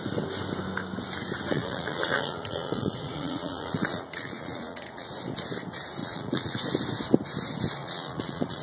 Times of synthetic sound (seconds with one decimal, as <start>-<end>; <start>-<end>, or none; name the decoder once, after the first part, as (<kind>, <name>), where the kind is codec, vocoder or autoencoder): 1.5-5.1 (vocoder, Vocos); 6.0-6.6; 7.8-8.6